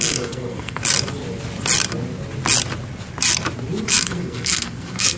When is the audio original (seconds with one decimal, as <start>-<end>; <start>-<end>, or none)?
0.8-3.9